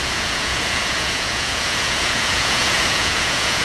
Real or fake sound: fake